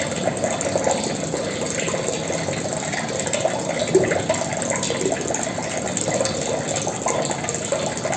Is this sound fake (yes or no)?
no